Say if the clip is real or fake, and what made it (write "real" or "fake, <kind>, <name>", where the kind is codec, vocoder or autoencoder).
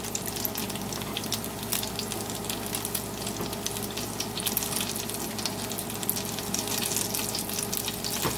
real